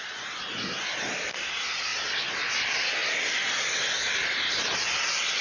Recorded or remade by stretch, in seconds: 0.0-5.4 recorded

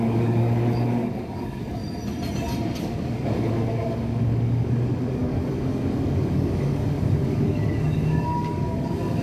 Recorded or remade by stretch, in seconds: 0.0-1.8 remade; 1.8-2.8 recorded; 2.8-9.2 remade

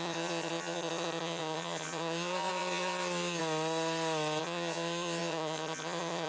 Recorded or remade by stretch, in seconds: 0.0-3.4 remade; 3.4-4.4 recorded; 4.4-6.3 remade

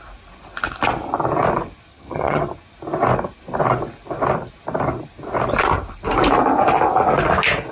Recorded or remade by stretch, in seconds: 0.0-1.9 recorded; 1.9-2.5 remade; 2.5-7.7 recorded

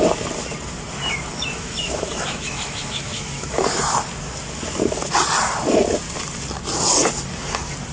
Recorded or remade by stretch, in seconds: 0.0-1.3 recorded; 1.3-3.6 remade; 3.6-7.9 recorded

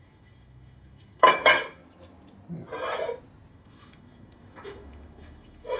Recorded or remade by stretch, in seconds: 0.0-1.8 remade; 1.8-3.5 recorded; 3.5-5.8 remade

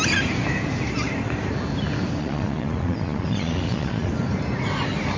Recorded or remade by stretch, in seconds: 0.0-2.2 recorded; 2.2-4.1 remade; 4.1-5.2 recorded